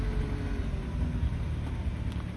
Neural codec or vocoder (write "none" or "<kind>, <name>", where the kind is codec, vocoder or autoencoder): none